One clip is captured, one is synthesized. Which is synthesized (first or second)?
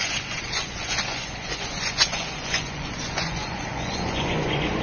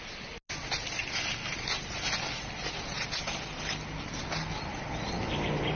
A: first